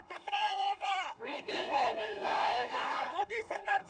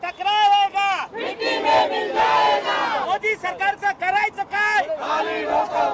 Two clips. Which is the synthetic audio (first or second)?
first